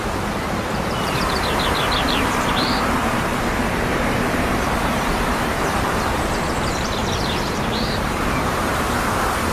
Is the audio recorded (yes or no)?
no